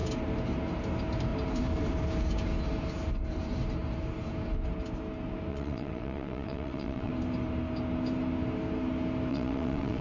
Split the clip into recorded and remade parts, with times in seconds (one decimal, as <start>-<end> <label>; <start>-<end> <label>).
0.0-5.5 recorded; 5.5-7.1 remade; 7.1-9.3 recorded; 9.3-10.0 remade